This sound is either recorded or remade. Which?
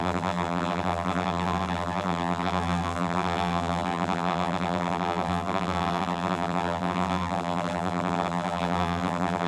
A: remade